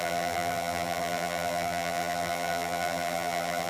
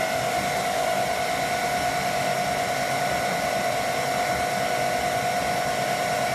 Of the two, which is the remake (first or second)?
first